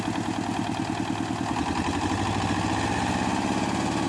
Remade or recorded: recorded